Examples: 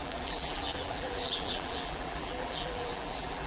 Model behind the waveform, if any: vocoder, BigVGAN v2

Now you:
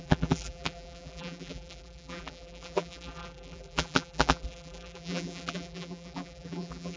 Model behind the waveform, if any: vocoder, BigVGAN v2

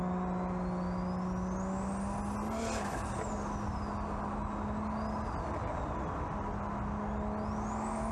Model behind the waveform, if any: none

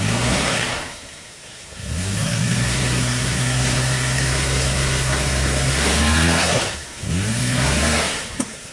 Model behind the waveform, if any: codec, SNAC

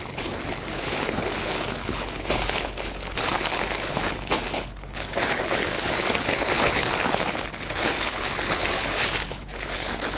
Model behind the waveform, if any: codec, HILCodec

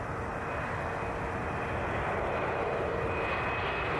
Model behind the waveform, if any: none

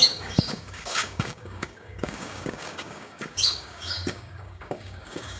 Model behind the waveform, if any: codec, DAC